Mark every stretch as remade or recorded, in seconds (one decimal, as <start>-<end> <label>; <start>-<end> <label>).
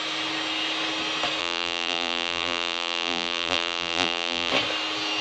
0.0-1.4 recorded; 1.4-4.5 remade; 4.5-5.2 recorded